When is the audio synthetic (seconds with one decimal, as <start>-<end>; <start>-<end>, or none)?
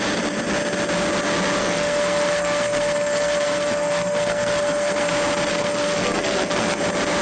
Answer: 1.6-5.1; 5.5-6.8